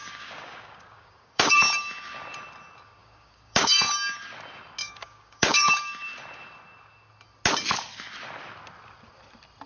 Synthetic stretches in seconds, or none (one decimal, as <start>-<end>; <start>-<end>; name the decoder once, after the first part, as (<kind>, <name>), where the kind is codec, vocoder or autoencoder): 0.0-1.5 (codec, DAC); 3.0-3.9; 4.8-5.7